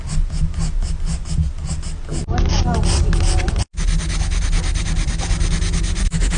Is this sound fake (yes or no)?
no